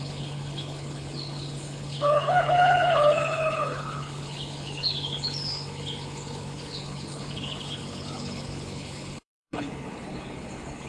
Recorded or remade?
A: remade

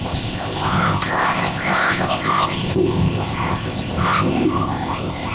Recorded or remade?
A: remade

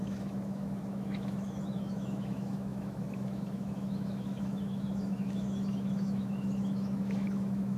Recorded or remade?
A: remade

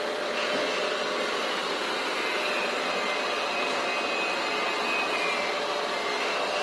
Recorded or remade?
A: recorded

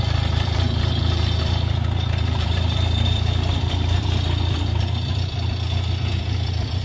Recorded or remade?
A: remade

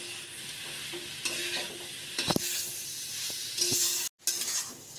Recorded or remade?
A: recorded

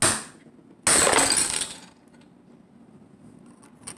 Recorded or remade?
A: recorded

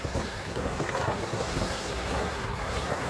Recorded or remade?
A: remade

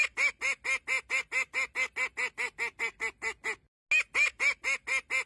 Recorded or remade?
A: recorded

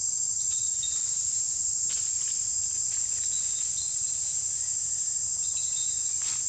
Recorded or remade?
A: recorded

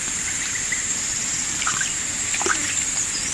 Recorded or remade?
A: remade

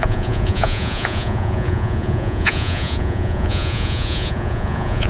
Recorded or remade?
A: remade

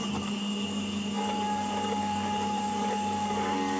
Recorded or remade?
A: remade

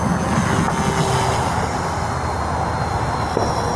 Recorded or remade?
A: recorded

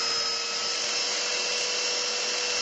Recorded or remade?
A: recorded